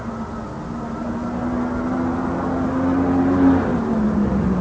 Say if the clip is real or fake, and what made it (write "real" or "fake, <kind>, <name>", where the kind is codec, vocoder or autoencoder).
real